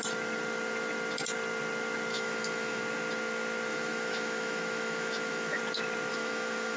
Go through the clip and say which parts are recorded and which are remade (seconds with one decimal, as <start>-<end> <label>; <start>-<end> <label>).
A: 0.0-2.1 recorded; 2.1-2.8 remade; 2.8-3.7 recorded; 3.7-5.6 remade; 5.6-6.1 recorded; 6.1-6.8 remade